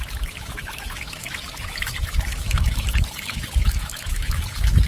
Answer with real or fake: fake